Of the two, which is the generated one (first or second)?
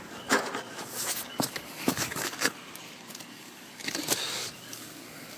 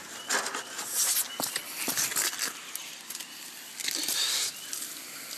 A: first